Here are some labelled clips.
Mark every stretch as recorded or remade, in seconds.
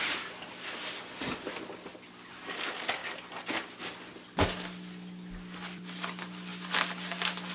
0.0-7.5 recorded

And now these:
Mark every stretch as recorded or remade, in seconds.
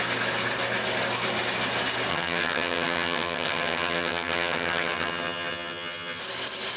0.0-2.1 recorded; 2.1-6.2 remade; 6.2-6.8 recorded